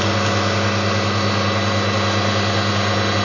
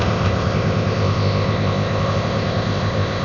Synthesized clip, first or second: second